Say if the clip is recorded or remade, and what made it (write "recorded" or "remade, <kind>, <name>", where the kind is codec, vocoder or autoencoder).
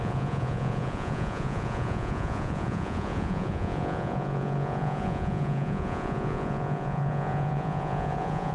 remade, vocoder, Vocos